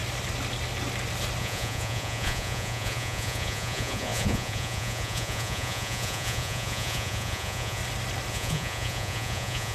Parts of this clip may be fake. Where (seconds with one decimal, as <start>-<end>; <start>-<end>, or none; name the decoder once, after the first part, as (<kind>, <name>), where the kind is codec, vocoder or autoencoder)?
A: 1.4-7.8 (vocoder, Vocos); 8.3-9.7